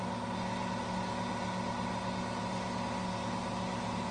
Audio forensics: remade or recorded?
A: recorded